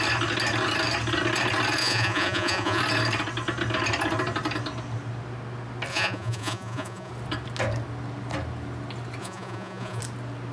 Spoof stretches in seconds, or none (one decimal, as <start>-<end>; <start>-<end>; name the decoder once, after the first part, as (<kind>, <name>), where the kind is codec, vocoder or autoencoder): 1.8-2.8 (vocoder, Vocos); 5.9-7.1; 9.2-10.0